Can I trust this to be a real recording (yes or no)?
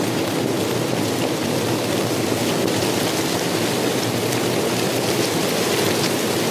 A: yes